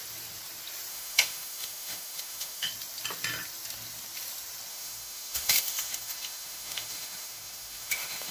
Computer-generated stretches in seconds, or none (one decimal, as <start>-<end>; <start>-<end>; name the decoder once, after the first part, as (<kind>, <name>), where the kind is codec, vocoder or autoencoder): 0.9-2.7 (autoencoder, DAC-VAE); 4.7-8.3